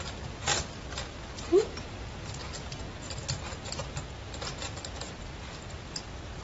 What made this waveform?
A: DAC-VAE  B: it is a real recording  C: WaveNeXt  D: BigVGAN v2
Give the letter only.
B